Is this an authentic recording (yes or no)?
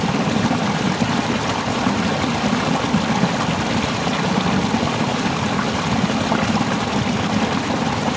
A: yes